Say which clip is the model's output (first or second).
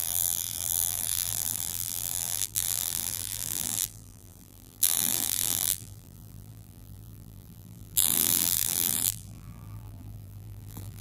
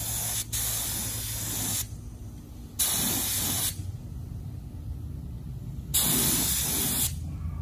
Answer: first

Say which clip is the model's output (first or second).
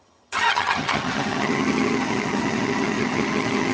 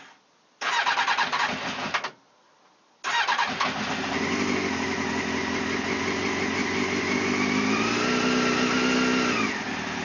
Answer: first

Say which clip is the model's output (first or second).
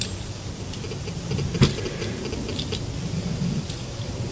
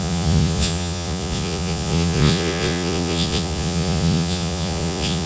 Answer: second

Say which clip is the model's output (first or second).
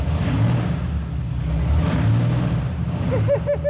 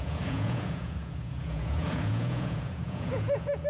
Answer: second